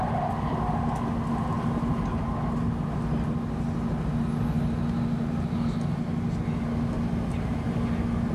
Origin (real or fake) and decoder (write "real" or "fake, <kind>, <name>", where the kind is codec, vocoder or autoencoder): real